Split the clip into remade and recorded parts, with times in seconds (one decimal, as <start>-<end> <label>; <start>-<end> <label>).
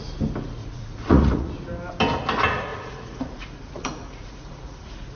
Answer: 0.0-0.6 recorded; 0.6-1.5 remade; 1.5-2.7 recorded; 2.7-5.2 remade